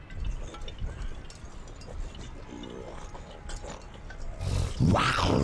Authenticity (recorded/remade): recorded